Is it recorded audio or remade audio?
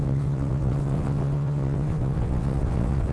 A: remade